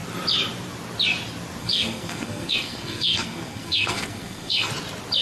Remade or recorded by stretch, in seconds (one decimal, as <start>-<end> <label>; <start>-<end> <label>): 0.0-1.6 recorded; 1.6-4.7 remade; 4.7-5.2 recorded